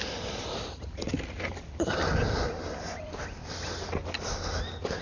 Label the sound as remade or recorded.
recorded